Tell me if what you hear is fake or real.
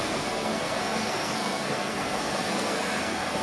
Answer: fake